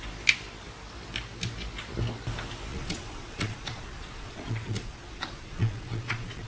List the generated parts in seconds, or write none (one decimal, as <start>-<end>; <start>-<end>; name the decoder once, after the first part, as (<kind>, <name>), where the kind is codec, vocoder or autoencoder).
2.7-6.5 (vocoder, Vocos)